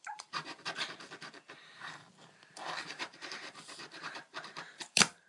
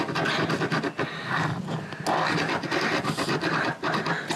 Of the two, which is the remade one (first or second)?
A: first